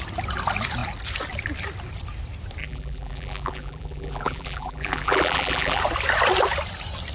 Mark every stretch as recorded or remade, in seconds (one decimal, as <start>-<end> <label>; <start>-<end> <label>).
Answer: 0.0-2.6 recorded; 2.6-5.8 remade; 5.8-7.1 recorded